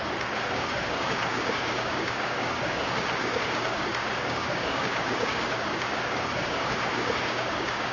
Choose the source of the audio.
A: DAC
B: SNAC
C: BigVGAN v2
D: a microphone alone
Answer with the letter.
A